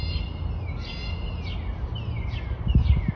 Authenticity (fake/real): real